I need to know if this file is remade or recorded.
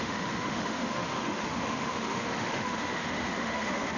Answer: remade